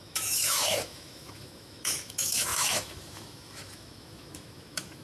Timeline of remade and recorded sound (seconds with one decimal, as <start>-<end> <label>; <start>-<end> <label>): 0.0-5.0 remade